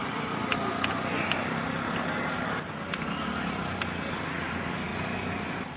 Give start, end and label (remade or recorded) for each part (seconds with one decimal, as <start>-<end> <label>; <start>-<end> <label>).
0.0-5.8 recorded